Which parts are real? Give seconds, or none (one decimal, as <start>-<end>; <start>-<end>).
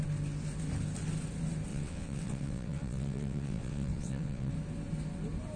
0.0-1.7; 4.5-5.6